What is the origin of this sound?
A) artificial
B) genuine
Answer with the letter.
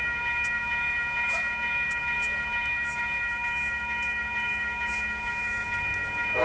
A